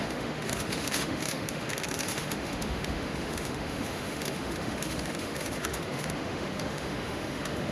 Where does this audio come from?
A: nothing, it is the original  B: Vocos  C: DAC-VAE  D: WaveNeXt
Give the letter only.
C